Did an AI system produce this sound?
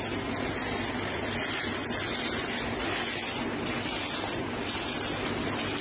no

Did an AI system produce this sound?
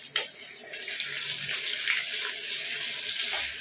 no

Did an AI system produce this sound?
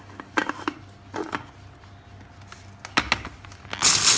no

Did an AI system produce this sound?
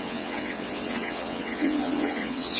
yes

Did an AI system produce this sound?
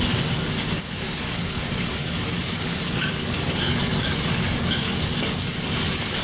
yes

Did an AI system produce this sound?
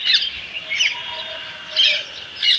no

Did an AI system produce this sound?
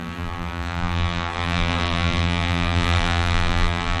yes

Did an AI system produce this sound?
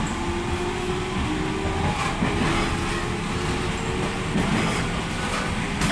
no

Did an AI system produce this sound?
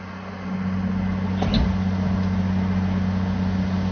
no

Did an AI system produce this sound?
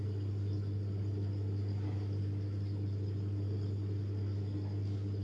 no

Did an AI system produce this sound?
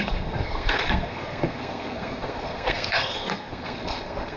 yes